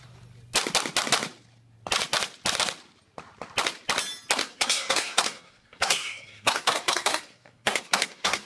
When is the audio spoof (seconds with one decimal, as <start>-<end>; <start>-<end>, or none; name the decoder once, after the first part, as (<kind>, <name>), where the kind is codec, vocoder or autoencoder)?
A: 4.4-8.5 (codec, SNAC)